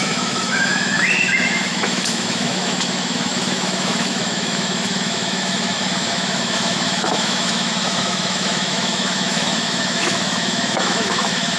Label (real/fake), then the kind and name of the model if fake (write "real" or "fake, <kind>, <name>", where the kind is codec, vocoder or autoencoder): fake, autoencoder, DAC-VAE